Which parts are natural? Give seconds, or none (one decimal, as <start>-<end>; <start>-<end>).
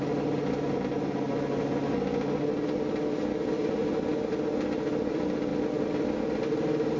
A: 0.0-7.0